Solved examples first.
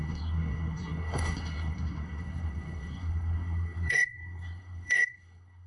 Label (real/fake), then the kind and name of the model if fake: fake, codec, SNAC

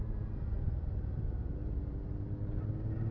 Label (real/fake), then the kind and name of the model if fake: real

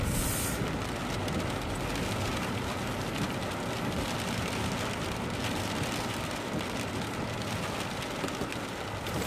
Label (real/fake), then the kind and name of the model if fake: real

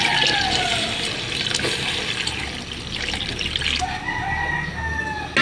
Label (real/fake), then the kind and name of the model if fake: real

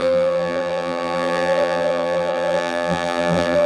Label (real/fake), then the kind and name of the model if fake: fake, vocoder, BigVGAN v2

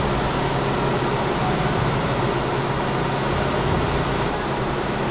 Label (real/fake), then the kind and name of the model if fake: real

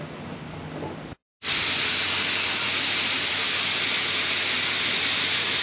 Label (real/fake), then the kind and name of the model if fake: real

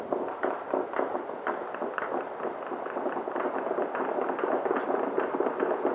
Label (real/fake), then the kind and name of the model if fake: real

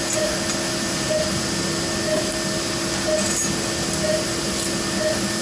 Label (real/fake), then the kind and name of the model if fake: real